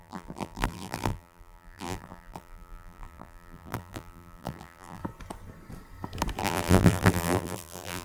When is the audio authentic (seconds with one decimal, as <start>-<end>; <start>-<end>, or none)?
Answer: 5.0-6.4